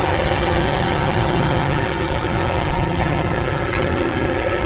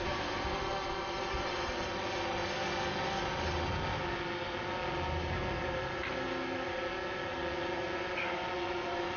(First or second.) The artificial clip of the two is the first